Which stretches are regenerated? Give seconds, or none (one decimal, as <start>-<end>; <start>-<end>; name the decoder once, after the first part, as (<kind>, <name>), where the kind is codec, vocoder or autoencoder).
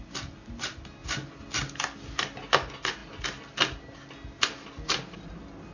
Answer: none